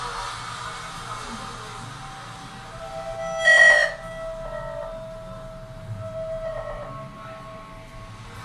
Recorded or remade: recorded